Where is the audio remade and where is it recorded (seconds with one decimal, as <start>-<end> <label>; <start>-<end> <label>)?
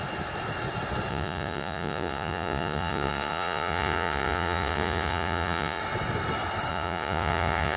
0.0-1.1 recorded; 1.1-5.8 remade; 5.8-6.7 recorded; 6.7-7.8 remade